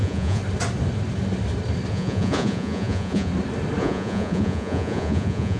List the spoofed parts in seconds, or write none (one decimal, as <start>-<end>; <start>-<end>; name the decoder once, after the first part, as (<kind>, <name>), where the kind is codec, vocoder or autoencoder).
0.0-0.4 (vocoder, Vocos); 1.9-3.3; 3.8-5.6